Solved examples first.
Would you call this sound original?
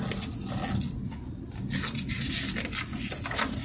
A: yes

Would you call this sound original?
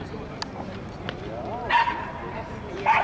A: yes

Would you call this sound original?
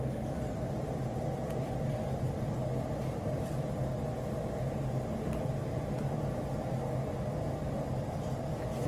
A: yes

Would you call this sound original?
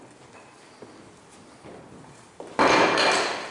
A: yes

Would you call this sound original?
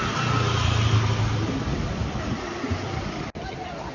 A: yes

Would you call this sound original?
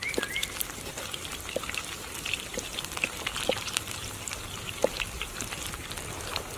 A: yes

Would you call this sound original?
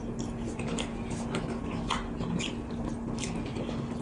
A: yes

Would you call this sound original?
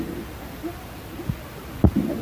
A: yes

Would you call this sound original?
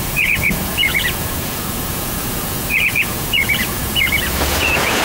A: no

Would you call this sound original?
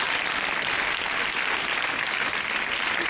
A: yes